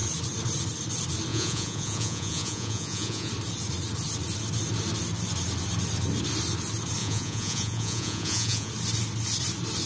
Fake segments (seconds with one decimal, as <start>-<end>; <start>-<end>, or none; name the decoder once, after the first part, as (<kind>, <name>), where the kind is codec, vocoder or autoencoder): 1.3-3.3 (vocoder, Vocos); 7.0-8.7